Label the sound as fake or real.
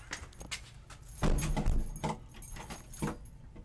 real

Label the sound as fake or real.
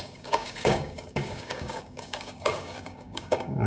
fake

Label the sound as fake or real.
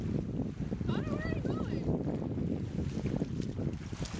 real